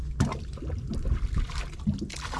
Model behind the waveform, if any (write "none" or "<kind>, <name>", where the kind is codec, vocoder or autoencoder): none